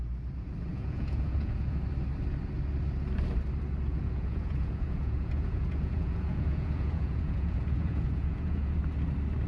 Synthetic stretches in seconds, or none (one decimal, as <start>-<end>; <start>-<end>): 0.7-1.8; 3.9-8.8